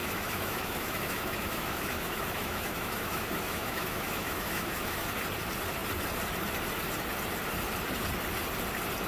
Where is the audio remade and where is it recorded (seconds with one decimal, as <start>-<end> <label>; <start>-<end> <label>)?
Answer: 0.0-5.1 remade; 5.1-9.1 recorded